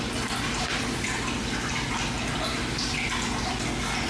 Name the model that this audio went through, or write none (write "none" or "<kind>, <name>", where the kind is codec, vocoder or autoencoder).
none